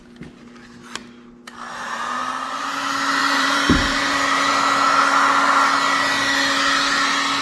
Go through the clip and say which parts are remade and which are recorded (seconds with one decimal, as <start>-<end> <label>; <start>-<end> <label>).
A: 0.0-3.2 recorded; 3.2-4.5 remade; 4.5-7.4 recorded